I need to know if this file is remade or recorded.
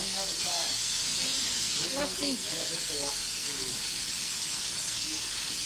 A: remade